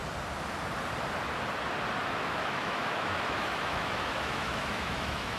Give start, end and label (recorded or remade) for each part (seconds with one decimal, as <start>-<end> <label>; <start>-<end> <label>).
0.0-2.0 recorded; 2.0-5.4 remade